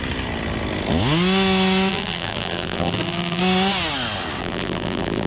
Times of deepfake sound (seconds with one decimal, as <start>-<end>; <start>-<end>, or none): 1.9-3.4; 4.4-5.3